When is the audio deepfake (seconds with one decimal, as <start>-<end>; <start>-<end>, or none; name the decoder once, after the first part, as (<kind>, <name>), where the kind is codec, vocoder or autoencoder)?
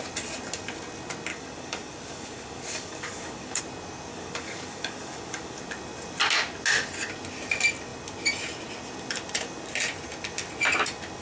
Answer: 1.3-3.6 (codec, DAC); 4.1-5.6